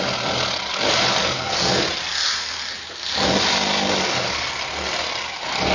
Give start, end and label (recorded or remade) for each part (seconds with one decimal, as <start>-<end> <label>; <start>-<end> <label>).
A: 0.0-0.7 recorded; 0.7-1.5 remade; 1.5-5.7 recorded